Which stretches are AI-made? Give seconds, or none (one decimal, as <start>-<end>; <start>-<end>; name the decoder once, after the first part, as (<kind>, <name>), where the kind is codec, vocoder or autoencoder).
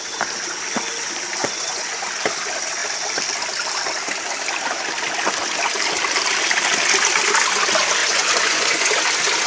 1.4-2.0 (vocoder, Vocos); 8.0-8.9